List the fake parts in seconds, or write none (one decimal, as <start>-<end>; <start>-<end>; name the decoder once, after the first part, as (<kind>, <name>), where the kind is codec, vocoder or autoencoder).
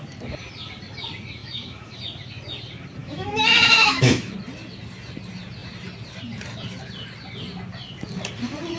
1.4-2.0 (autoencoder, DAC-VAE); 3.0-4.3